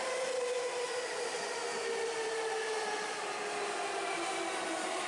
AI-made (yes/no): no